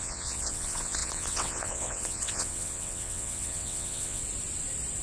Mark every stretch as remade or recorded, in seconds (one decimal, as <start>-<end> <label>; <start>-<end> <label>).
0.0-4.2 remade; 4.2-5.0 recorded

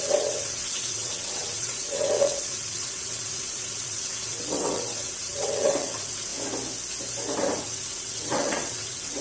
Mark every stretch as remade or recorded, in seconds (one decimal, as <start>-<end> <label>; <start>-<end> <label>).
0.0-6.3 remade; 6.3-7.6 recorded; 7.6-9.2 remade

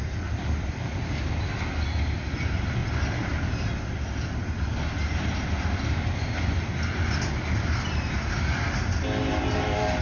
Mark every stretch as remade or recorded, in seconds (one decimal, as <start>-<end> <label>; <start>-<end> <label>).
0.0-10.0 recorded

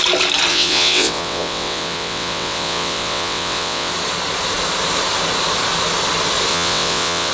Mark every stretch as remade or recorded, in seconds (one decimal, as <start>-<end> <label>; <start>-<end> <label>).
0.0-0.5 recorded; 0.5-3.9 remade; 3.9-6.5 recorded; 6.5-7.3 remade

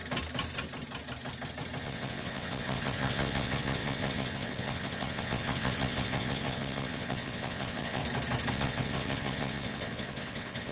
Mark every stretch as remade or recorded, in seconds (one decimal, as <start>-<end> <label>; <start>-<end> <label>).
0.0-1.8 recorded; 1.8-8.0 remade; 8.0-8.5 recorded; 8.5-10.7 remade

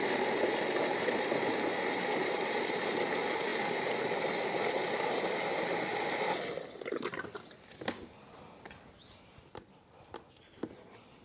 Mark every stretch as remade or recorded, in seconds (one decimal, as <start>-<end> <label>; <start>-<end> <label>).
0.0-11.2 recorded

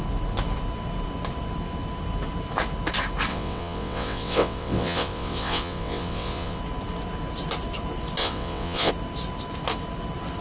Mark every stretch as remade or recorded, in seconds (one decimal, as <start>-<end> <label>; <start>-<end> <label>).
0.0-3.3 recorded; 3.3-6.6 remade; 6.6-8.2 recorded; 8.2-8.9 remade; 8.9-10.4 recorded

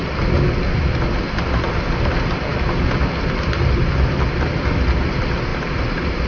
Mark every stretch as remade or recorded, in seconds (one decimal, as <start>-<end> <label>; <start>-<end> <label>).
0.0-6.3 recorded